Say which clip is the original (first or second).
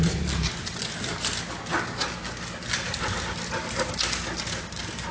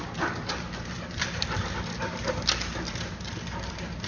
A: first